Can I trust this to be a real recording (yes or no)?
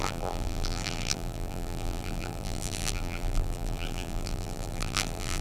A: no